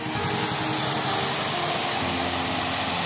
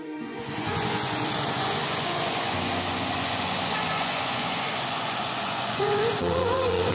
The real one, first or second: first